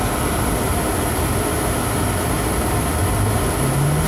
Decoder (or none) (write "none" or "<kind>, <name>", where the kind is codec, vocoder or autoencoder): none